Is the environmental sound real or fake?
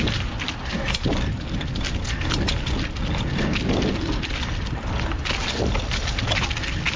real